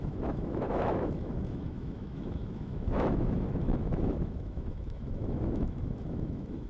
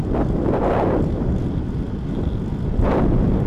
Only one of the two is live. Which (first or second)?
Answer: second